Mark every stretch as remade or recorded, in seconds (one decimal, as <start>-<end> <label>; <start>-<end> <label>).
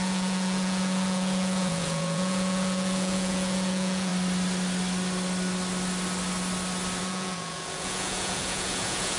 0.0-4.1 remade; 4.1-7.0 recorded; 7.0-9.2 remade